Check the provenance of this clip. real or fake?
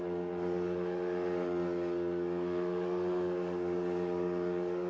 fake